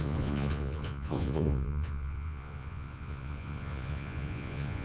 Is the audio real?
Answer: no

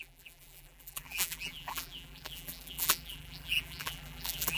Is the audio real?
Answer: no